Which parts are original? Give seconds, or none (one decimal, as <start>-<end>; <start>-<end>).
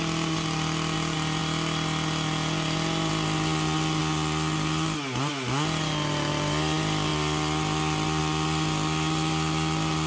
0.0-10.1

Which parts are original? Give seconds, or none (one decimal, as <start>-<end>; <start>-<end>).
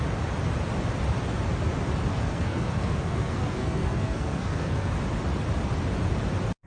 0.0-2.1; 4.9-6.7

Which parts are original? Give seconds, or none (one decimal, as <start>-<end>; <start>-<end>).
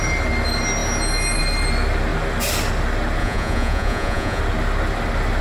0.0-3.2; 4.4-5.4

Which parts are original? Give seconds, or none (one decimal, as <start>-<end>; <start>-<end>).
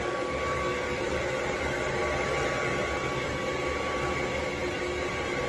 0.0-5.5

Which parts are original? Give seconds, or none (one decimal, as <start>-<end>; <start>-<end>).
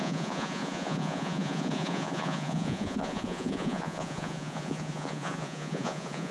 none